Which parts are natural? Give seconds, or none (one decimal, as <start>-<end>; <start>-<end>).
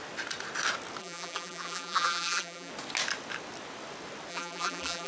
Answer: 0.0-1.0; 2.7-4.3